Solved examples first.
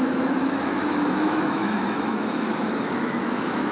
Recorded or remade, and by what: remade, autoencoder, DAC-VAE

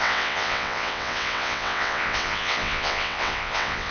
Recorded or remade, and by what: remade, vocoder, WaveNeXt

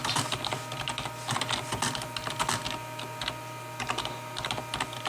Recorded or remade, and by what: recorded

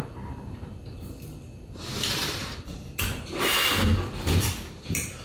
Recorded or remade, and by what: remade, vocoder, BigVGAN v2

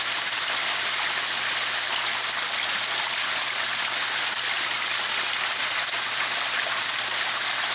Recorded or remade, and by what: recorded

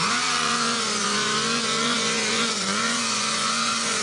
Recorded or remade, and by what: remade, vocoder, Vocos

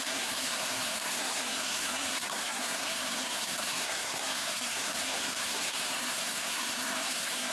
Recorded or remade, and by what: remade, codec, SNAC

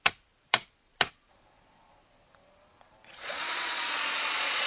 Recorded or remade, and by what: remade, vocoder, Vocos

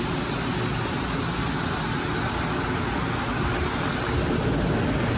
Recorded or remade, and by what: recorded